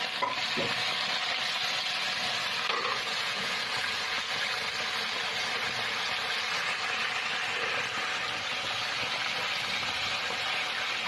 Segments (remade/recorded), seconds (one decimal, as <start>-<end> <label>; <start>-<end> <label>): 0.0-2.9 recorded; 2.9-4.3 remade; 4.3-11.1 recorded

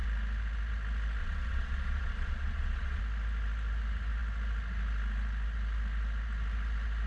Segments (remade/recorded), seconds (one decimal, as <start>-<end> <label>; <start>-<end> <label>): 0.0-1.2 recorded; 1.2-3.0 remade; 3.0-7.1 recorded